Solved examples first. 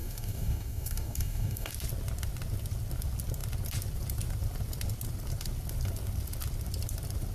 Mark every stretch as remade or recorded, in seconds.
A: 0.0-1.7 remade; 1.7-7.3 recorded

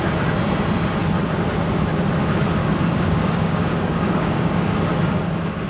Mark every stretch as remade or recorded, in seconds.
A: 0.0-2.6 recorded; 2.6-4.7 remade; 4.7-5.7 recorded

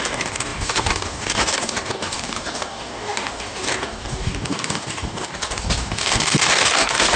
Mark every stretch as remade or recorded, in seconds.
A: 0.0-7.2 remade

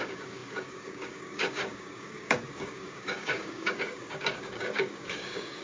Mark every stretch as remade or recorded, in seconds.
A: 0.0-5.6 remade

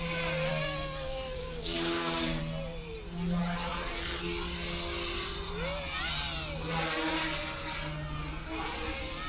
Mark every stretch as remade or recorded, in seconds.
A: 0.0-0.5 recorded; 0.5-2.4 remade; 2.4-9.3 recorded

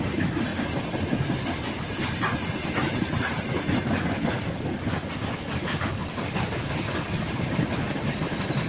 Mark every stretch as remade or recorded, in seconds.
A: 0.0-8.7 recorded

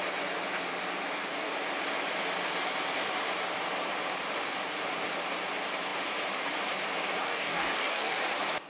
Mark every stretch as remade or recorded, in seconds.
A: 0.0-7.2 recorded; 7.2-8.2 remade; 8.2-8.7 recorded

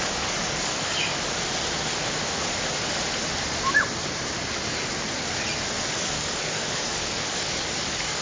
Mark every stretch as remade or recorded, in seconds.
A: 0.0-1.1 remade; 1.1-5.9 recorded; 5.9-8.2 remade